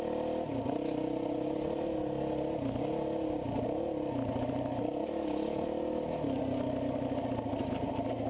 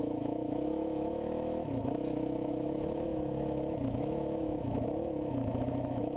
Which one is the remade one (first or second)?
second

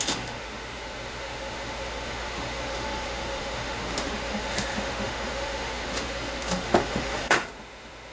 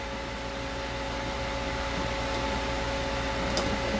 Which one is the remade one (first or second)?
first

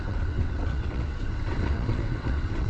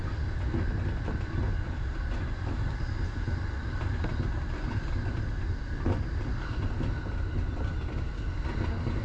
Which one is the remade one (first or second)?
first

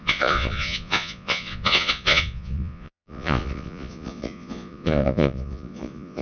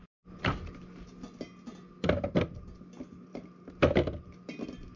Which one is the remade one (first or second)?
first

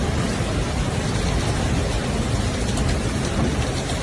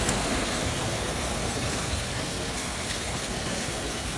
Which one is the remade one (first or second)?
second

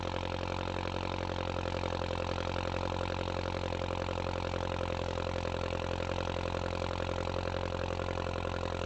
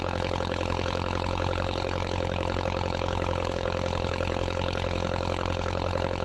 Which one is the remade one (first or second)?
second